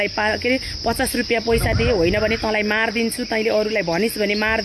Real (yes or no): yes